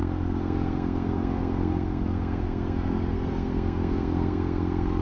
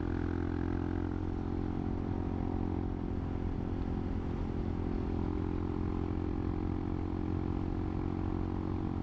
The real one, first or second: second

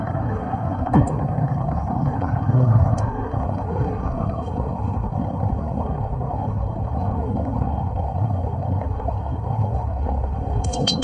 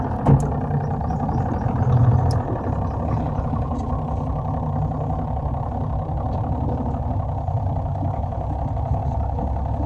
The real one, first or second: second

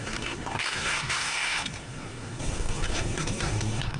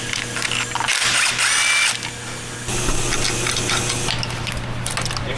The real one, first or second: second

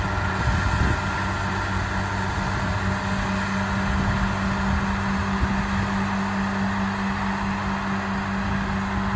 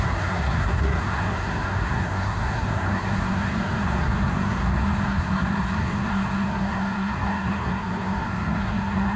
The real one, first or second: first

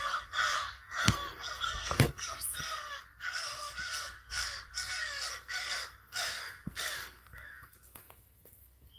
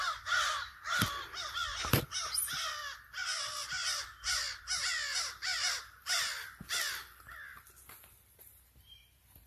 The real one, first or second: second